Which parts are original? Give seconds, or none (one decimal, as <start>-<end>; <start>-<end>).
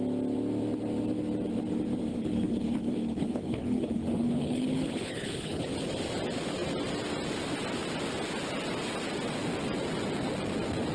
0.0-2.1; 5.6-10.9